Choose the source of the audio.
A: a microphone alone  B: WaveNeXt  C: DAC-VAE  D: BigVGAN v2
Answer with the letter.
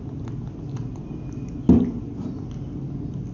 A